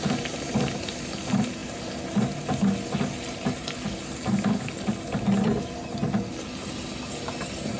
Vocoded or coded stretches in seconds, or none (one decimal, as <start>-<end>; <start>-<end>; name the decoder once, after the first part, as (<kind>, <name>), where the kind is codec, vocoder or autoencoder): none